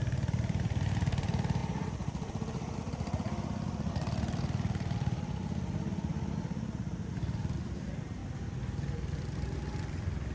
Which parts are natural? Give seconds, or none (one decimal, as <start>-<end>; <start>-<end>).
5.4-5.9; 8.2-9.7